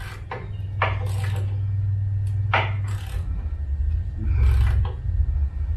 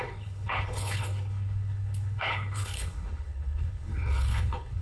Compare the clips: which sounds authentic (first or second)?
first